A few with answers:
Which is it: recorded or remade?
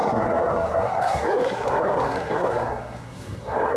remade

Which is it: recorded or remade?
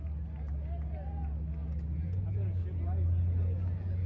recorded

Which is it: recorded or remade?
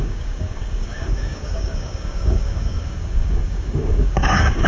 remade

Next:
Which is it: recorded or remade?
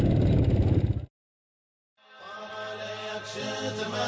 recorded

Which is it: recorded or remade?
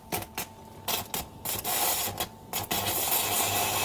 recorded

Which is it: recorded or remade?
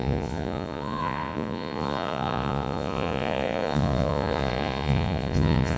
remade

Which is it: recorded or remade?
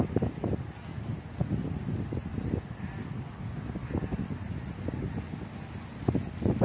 recorded